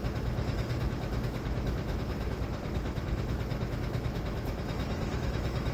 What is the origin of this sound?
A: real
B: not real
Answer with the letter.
B